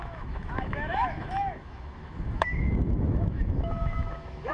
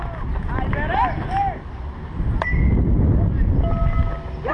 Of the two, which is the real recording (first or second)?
second